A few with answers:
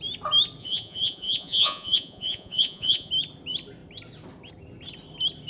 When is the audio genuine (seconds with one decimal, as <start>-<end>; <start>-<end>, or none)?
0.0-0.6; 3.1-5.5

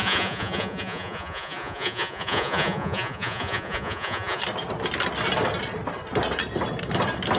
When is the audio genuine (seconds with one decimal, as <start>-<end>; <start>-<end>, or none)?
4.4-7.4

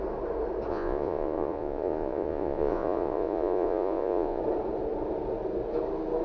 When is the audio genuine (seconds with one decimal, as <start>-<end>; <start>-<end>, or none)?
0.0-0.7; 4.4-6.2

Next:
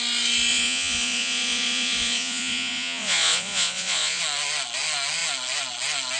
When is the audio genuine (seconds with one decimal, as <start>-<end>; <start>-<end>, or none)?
0.0-0.5; 4.2-6.2

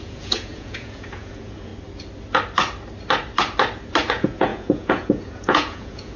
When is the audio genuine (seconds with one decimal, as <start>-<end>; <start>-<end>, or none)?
1.7-4.1

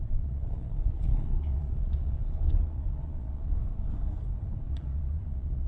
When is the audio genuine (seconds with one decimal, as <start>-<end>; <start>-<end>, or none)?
3.6-4.7

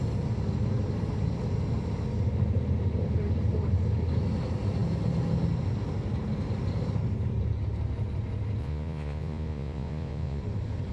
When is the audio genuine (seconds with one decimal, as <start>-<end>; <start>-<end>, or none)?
0.0-8.6; 10.4-10.9

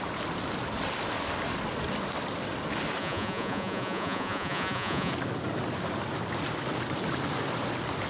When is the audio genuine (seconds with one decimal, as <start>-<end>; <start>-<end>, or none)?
0.0-3.0; 5.1-8.1